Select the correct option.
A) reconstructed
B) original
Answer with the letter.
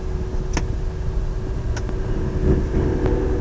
B